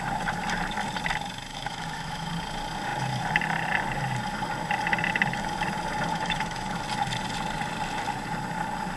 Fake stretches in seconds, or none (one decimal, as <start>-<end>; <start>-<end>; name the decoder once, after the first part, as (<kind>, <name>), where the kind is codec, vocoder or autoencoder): 1.5-2.3 (autoencoder, DAC-VAE); 6.1-6.8